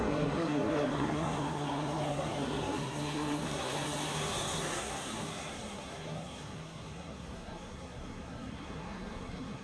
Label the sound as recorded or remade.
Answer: remade